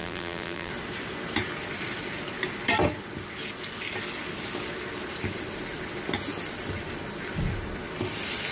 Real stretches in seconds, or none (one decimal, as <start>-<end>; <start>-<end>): 0.7-8.5